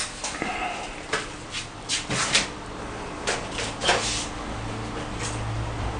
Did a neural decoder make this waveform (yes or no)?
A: no